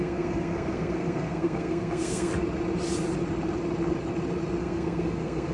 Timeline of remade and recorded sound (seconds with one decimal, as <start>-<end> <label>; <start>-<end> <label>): 0.0-2.3 remade; 2.3-4.6 recorded; 4.6-5.5 remade